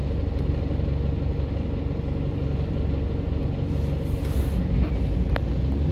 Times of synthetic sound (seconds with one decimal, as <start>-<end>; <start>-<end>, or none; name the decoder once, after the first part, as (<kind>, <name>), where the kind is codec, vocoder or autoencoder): none